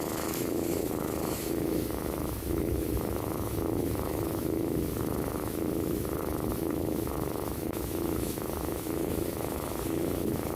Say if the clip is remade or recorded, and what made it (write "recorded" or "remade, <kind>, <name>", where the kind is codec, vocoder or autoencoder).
remade, autoencoder, DAC-VAE